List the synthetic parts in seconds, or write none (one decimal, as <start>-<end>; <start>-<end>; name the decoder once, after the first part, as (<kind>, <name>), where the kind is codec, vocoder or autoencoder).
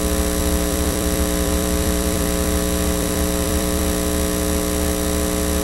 0.4-3.8 (vocoder, BigVGAN v2)